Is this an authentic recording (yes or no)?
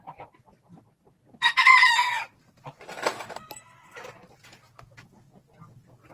yes